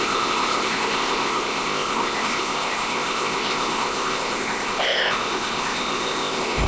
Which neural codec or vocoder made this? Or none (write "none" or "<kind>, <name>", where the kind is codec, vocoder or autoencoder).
codec, ZipCodec